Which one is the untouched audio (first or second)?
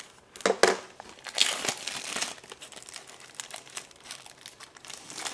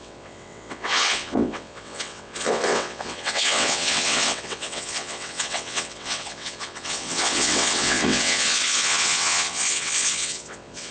first